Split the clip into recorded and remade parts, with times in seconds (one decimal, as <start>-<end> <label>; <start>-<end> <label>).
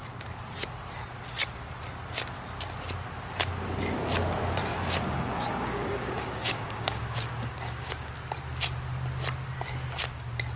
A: 0.0-4.7 recorded; 4.7-8.1 remade; 8.1-10.6 recorded